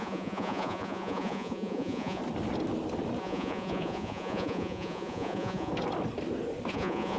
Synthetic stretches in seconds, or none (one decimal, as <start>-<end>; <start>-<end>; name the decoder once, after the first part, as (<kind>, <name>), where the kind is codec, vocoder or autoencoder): 0.0-2.2 (vocoder, Vocos); 3.2-5.7; 6.7-7.2

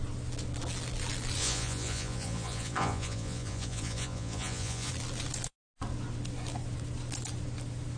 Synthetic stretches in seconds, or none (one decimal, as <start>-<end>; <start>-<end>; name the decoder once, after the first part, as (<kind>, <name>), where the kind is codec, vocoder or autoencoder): 1.4-4.9 (vocoder, Vocos)